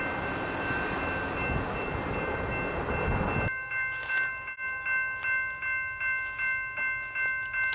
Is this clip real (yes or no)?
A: yes